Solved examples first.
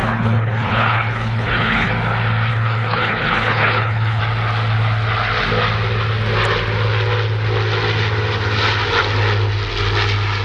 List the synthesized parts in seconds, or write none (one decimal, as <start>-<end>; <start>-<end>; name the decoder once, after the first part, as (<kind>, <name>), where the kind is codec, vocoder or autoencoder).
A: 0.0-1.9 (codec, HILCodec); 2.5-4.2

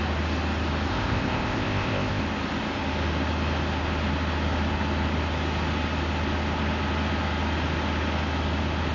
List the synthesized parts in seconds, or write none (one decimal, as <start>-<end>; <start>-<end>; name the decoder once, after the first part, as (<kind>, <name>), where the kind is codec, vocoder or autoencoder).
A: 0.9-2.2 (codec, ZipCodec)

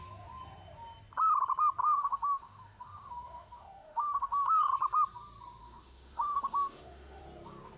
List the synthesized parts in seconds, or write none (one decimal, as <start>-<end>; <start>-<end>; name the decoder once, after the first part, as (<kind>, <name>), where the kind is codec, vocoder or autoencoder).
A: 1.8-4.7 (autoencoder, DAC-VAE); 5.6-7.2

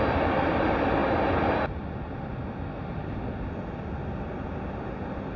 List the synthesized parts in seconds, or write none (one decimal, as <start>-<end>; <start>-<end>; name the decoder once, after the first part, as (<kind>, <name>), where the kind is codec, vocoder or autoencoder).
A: none

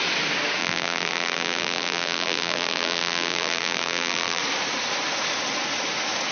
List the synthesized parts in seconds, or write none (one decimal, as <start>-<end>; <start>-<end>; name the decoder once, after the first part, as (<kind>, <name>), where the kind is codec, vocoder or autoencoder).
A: 0.6-4.4 (vocoder, BigVGAN v2)

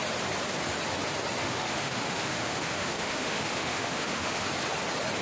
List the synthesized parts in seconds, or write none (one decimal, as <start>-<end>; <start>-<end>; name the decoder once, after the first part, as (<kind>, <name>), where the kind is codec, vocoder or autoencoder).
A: 1.4-4.5 (autoencoder, DAC-VAE)

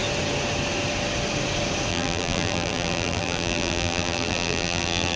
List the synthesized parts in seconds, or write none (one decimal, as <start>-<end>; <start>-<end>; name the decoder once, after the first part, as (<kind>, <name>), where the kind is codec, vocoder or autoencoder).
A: 1.9-5.2 (vocoder, BigVGAN v2)